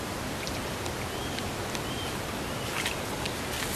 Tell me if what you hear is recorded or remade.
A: recorded